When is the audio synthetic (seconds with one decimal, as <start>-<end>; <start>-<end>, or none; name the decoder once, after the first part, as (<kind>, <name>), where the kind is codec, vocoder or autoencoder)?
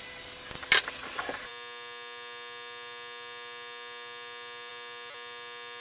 none